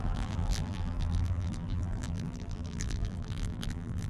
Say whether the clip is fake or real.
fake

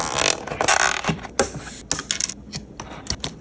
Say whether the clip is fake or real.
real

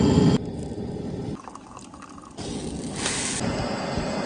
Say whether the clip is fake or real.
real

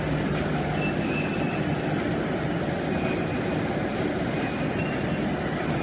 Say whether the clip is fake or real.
real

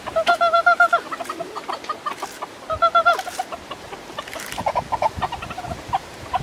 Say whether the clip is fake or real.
fake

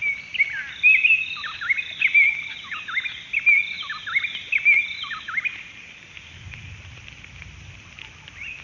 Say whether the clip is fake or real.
real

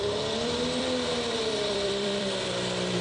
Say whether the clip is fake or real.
fake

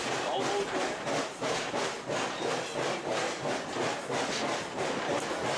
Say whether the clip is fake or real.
real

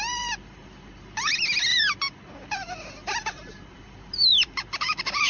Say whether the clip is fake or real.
fake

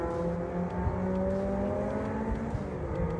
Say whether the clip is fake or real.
real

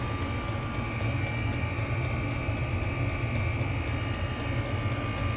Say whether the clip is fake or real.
real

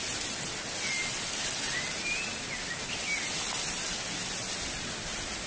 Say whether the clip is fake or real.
real